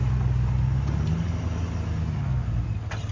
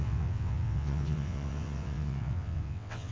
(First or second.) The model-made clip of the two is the second